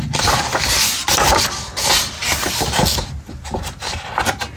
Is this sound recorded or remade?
recorded